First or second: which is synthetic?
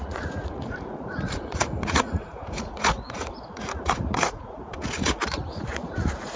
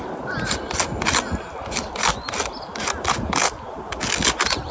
first